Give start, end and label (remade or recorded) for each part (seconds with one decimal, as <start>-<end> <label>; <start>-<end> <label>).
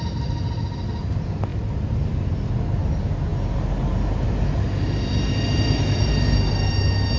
0.0-7.2 recorded